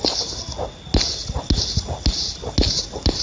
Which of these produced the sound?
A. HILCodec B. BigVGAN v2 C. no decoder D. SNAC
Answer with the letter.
C